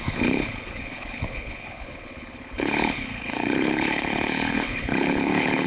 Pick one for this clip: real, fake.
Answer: fake